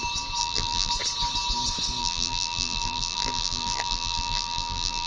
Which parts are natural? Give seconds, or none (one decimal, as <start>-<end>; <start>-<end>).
0.0-0.4; 0.9-2.0